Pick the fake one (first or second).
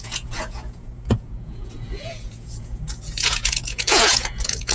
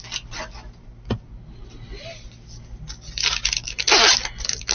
first